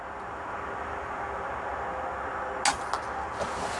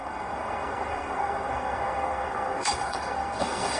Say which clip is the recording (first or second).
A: first